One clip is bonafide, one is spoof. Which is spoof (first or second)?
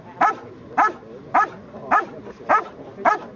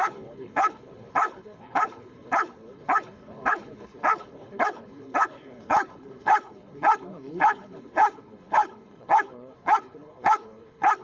second